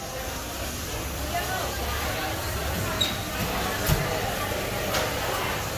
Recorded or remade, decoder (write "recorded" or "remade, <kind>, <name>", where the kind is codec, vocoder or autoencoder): recorded